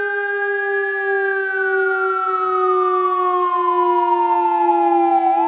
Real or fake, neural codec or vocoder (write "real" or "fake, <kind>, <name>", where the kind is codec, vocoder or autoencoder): real